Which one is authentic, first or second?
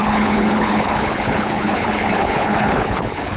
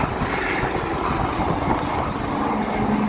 second